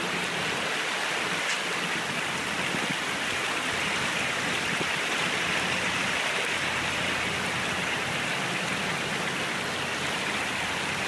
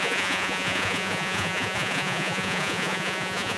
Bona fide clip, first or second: first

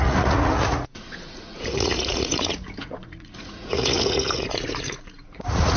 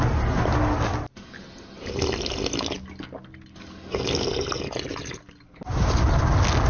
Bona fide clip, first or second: second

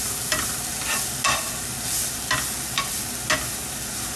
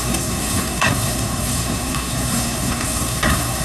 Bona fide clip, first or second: first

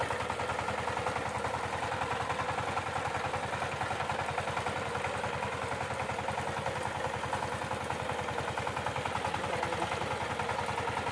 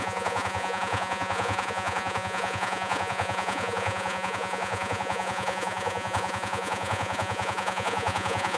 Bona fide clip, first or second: first